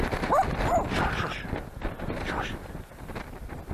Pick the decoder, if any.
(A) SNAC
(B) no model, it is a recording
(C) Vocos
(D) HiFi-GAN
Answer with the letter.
B